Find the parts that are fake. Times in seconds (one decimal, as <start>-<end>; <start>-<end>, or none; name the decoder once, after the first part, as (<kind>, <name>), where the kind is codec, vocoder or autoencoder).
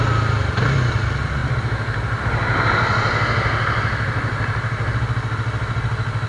none